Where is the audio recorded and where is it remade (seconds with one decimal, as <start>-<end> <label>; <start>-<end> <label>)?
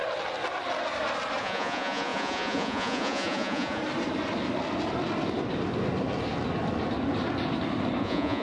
0.0-1.4 recorded; 1.4-3.8 remade; 3.8-8.0 recorded; 8.0-8.4 remade